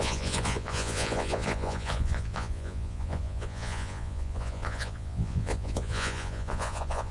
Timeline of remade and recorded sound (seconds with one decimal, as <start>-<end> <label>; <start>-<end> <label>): 0.0-7.1 remade